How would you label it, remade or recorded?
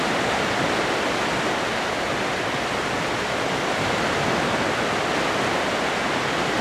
recorded